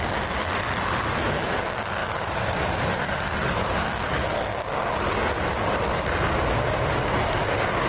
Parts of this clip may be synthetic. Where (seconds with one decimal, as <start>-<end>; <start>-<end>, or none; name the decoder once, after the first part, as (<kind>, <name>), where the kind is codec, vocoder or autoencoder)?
2.0-3.9 (vocoder, BigVGAN v2)